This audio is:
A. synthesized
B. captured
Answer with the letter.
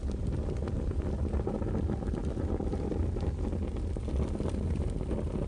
B